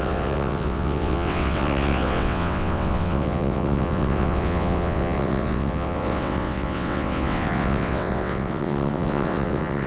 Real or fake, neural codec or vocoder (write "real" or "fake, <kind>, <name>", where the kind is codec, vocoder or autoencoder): fake, vocoder, WaveNeXt